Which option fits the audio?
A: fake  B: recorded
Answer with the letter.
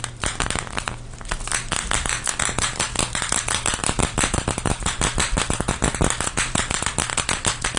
B